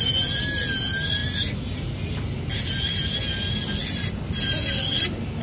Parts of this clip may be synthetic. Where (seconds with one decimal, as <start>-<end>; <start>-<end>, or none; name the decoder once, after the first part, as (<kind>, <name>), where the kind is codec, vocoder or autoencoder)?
none